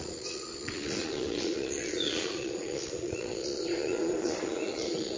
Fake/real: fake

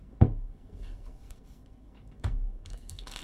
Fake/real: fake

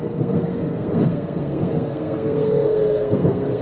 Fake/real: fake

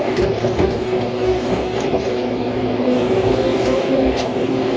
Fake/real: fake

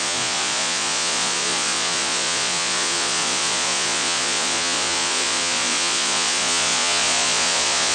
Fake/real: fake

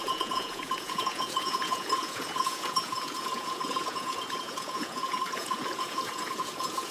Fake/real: fake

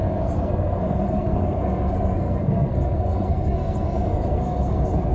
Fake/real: fake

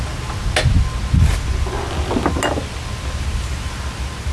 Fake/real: real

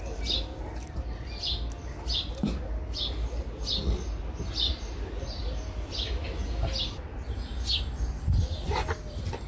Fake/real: real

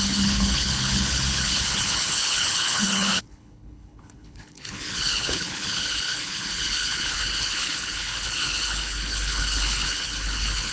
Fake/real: fake